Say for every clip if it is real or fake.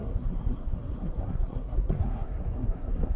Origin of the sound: fake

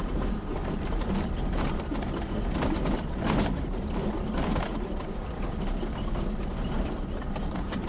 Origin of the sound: real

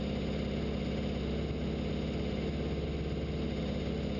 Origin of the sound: real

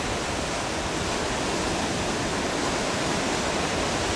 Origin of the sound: real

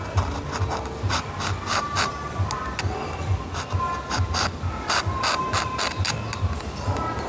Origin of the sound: real